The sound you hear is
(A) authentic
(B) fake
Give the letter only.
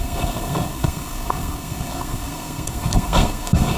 B